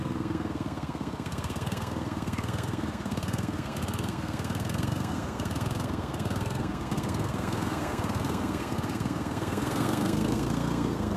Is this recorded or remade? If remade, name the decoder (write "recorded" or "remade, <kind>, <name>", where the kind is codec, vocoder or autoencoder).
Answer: remade, codec, SNAC